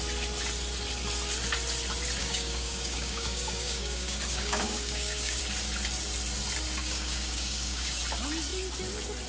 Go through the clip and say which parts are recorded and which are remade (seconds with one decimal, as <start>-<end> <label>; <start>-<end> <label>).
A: 0.0-2.2 recorded; 2.2-5.4 remade; 5.4-6.8 recorded; 6.8-8.0 remade; 8.0-9.3 recorded